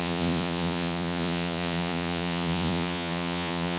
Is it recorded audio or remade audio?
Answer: remade